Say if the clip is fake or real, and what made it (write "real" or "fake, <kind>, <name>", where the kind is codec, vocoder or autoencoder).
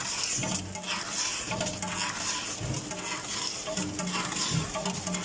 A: real